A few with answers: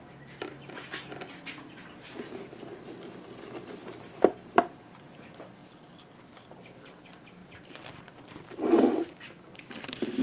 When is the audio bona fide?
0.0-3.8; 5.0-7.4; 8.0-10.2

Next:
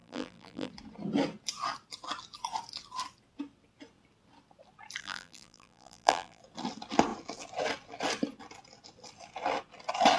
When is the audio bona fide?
0.7-5.0; 6.4-10.2

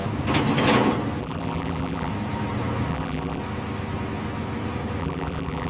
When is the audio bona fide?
0.0-1.2; 2.1-2.9; 3.4-5.0

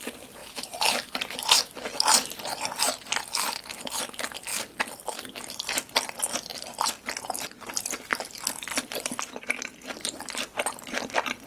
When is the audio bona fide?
0.0-0.4; 1.6-11.5

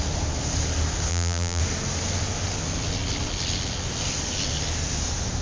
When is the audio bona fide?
0.0-1.1; 1.6-5.4

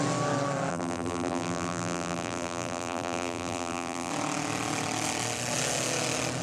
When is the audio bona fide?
0.0-0.7; 4.1-6.4

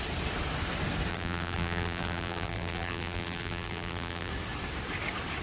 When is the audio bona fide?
0.0-1.1; 4.3-5.4